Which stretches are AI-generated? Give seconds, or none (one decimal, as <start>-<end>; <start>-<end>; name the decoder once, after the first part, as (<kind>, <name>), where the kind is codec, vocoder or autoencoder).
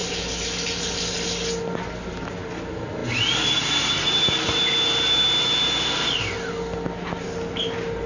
none